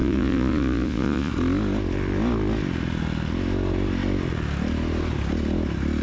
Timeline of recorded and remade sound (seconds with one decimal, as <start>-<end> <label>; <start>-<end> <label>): 0.0-1.3 remade; 1.3-6.0 recorded